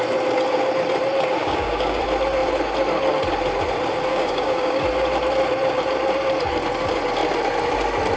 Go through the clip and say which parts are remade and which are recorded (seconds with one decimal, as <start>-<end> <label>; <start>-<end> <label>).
0.0-1.4 recorded; 1.4-2.0 remade; 2.0-4.1 recorded; 4.1-4.8 remade; 4.8-8.2 recorded